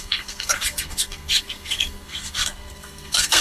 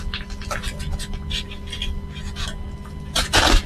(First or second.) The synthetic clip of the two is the first